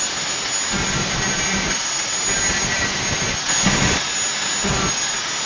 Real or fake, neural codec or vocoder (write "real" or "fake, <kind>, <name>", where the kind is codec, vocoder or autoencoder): real